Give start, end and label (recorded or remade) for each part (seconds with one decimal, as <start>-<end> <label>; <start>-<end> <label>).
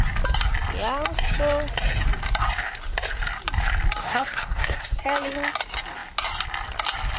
0.0-4.0 recorded; 4.0-5.0 remade; 5.0-7.2 recorded